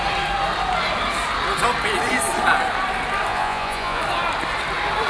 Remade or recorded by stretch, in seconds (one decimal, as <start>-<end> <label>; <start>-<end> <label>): 0.0-3.3 recorded; 3.3-4.0 remade; 4.0-5.1 recorded